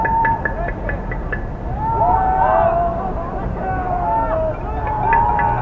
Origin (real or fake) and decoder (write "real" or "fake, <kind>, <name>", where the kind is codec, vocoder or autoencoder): real